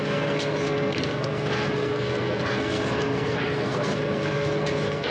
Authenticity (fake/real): fake